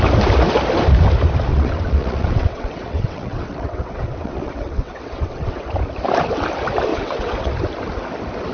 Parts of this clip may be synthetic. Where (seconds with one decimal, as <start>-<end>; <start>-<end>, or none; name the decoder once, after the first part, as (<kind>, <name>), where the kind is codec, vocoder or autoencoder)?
1.5-5.8 (vocoder, WaveNeXt); 6.9-7.5